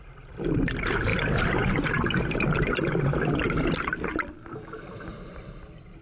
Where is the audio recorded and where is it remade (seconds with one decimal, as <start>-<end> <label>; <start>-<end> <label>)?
0.0-6.0 recorded